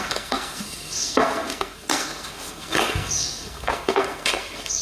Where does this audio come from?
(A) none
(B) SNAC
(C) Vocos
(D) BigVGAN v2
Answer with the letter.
B